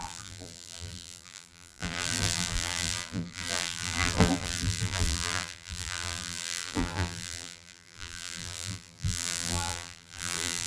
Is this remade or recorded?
remade